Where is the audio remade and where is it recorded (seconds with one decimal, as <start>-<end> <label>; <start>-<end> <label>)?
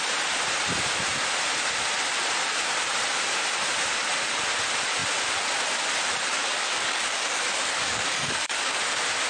0.0-6.4 recorded; 6.4-8.8 remade; 8.8-9.3 recorded